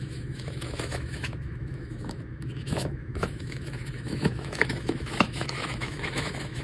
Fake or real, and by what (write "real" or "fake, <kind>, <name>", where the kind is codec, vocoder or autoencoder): fake, autoencoder, DAC-VAE